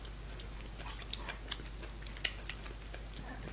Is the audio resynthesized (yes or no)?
no